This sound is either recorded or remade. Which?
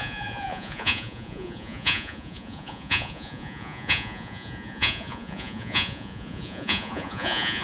remade